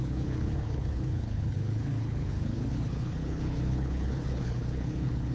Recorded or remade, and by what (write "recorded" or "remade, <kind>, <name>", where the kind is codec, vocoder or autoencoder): remade, codec, HILCodec